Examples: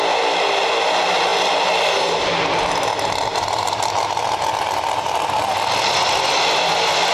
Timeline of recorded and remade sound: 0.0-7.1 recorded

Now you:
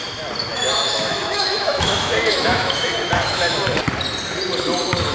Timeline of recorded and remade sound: 0.0-0.5 recorded; 0.5-3.6 remade; 3.6-5.1 recorded